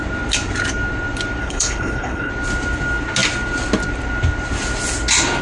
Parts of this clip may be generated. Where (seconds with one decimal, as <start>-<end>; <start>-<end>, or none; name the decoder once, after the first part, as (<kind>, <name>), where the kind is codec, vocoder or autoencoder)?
1.4-2.3 (codec, HILCodec)